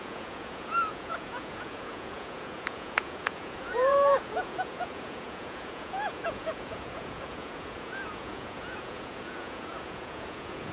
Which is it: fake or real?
fake